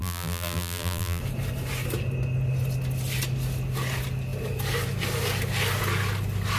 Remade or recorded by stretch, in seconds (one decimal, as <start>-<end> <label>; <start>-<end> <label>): 0.0-1.2 remade; 1.2-6.6 recorded